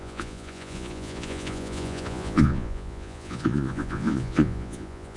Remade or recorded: remade